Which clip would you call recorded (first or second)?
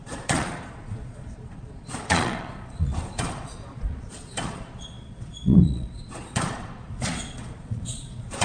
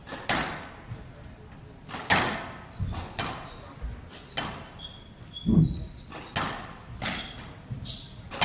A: second